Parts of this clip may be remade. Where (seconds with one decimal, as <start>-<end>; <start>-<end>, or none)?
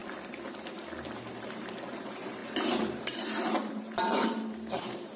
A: 2.0-5.2